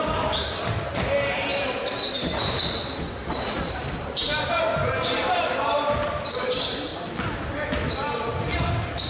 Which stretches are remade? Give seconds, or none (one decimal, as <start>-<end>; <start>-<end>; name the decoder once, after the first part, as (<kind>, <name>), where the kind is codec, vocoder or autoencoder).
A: 0.0-6.9 (vocoder, BigVGAN v2)